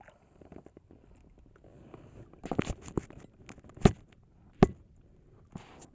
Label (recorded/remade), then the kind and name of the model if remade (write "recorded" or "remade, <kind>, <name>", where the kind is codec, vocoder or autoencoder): recorded